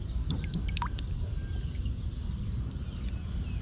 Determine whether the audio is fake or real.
real